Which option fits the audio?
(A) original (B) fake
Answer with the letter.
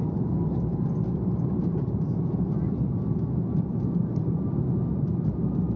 B